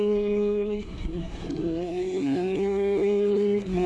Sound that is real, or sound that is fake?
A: fake